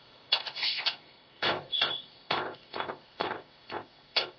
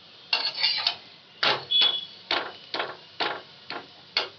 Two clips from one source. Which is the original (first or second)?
second